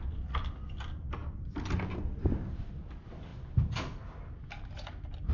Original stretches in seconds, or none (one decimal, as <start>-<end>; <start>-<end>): 0.0-5.3